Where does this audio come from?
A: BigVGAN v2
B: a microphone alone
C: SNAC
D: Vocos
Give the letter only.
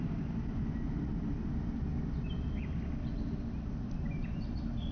B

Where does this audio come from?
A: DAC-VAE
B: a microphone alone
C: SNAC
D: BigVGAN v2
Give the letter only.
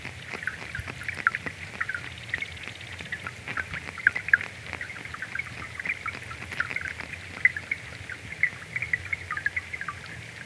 B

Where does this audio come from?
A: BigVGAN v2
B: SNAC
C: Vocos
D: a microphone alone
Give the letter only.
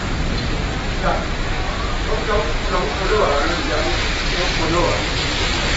D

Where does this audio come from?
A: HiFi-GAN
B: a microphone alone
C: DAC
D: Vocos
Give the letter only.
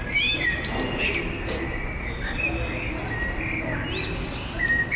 B